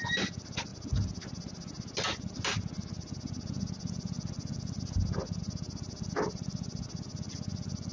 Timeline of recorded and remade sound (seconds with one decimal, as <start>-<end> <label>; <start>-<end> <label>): 0.0-7.9 recorded